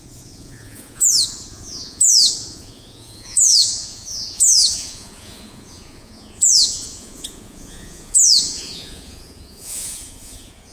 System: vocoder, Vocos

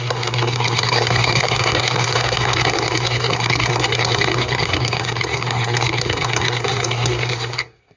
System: codec, SNAC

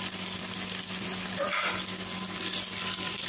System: vocoder, BigVGAN v2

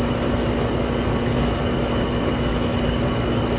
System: vocoder, BigVGAN v2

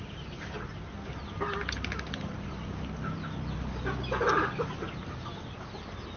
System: none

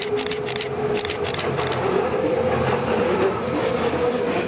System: none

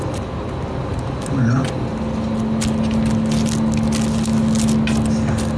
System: none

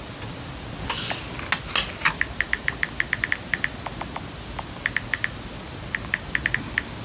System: none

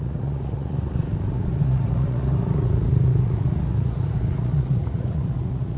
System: vocoder, Vocos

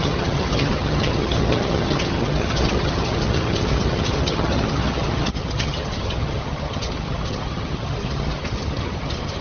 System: vocoder, HiFi-GAN